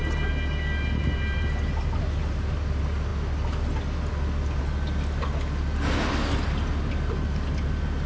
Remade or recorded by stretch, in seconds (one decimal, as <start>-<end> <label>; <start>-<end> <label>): 0.0-8.1 recorded